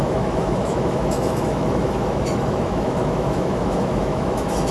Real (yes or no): no